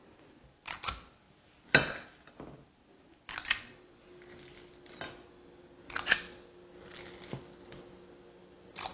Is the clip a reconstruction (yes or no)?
no